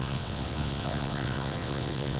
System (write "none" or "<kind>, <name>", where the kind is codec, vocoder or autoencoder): vocoder, WaveNeXt